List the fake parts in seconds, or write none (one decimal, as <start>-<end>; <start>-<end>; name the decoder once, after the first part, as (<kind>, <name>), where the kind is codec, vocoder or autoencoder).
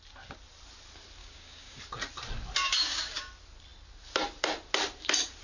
1.2-1.8 (codec, DAC); 2.6-3.3